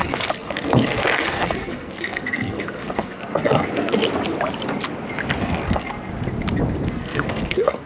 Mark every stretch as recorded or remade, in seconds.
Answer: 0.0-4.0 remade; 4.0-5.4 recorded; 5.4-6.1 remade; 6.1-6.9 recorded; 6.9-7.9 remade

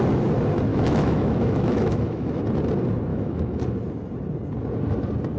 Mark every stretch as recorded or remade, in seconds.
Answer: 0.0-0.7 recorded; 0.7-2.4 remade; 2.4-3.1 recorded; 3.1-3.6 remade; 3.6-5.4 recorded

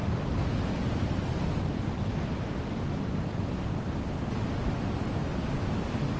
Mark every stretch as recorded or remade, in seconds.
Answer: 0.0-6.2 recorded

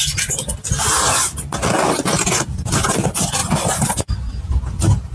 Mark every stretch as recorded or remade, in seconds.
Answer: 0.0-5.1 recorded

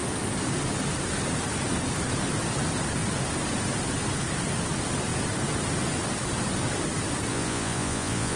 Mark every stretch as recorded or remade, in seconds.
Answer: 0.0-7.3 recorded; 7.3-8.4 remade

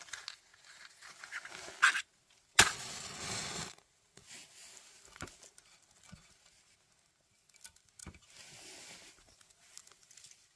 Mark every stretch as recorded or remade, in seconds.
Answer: 0.0-10.6 recorded